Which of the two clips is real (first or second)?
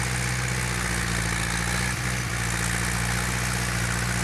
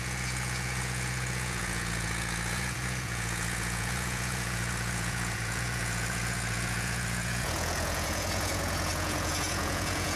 first